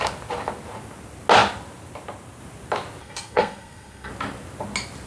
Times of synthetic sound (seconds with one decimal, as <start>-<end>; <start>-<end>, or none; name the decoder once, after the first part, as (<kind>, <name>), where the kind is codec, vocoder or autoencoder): 3.0-4.1 (codec, SNAC)